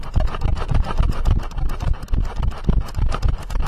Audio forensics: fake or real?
real